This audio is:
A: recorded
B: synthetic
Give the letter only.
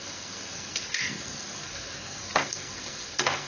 B